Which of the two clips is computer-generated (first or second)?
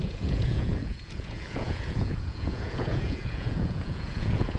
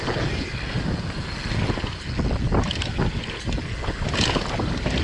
first